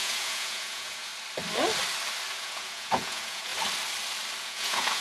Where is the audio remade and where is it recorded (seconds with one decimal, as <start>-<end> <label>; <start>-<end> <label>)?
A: 0.0-1.1 remade; 1.1-2.4 recorded; 2.4-3.5 remade; 3.5-4.4 recorded; 4.4-5.0 remade